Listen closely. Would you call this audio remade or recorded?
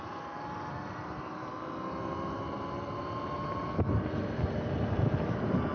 recorded